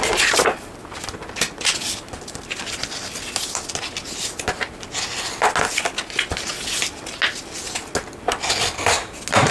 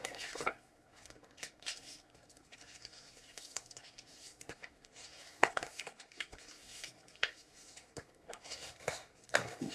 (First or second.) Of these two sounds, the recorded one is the first